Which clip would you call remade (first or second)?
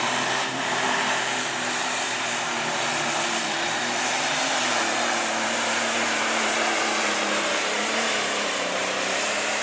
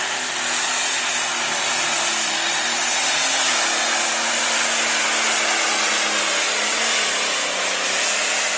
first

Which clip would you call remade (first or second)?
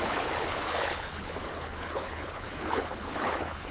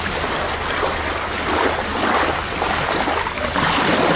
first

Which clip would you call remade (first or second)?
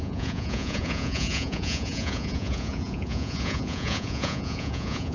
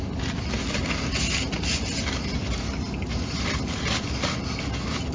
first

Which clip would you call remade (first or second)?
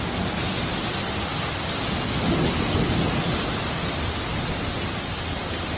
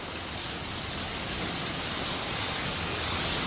second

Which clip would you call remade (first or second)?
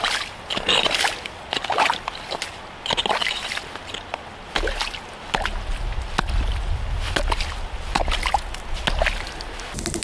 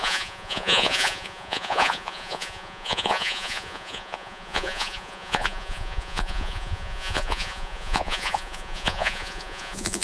second